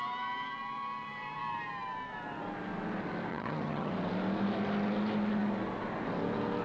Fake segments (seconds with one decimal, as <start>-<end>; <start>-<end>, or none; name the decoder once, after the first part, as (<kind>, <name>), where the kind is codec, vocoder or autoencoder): 3.3-3.9 (vocoder, HiFi-GAN)